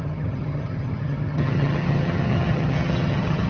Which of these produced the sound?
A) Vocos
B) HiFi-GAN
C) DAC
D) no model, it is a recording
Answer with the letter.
B